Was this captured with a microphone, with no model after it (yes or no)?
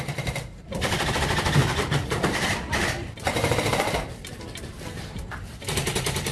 no